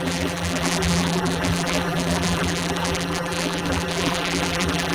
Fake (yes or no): yes